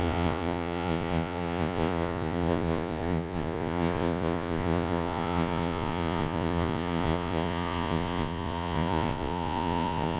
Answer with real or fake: fake